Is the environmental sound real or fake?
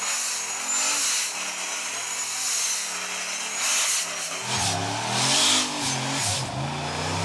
real